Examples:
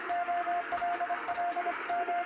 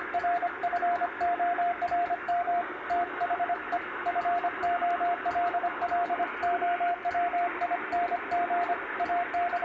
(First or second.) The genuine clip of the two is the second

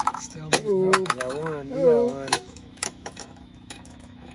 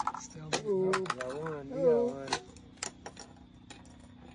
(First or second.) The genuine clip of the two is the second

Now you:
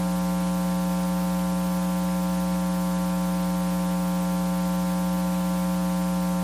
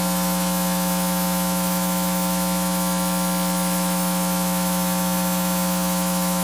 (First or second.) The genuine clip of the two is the first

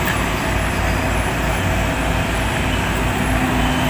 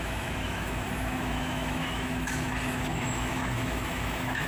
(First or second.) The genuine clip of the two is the first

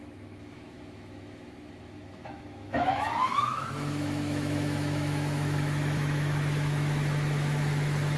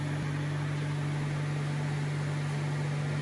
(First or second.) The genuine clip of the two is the second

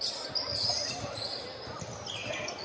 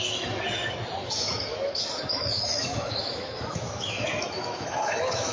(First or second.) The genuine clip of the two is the first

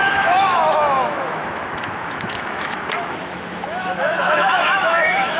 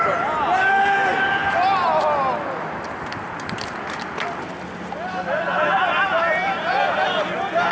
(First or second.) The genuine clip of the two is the second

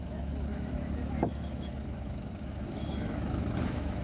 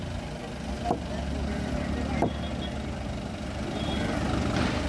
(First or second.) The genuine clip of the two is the second